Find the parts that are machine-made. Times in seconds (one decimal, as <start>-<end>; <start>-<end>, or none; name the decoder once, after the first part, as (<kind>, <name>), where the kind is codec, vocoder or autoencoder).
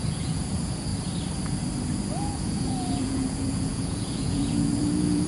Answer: 0.0-0.9 (vocoder, Vocos); 2.1-5.3